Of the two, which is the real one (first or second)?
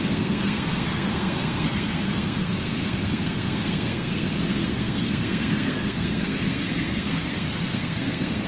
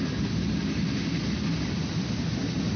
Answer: second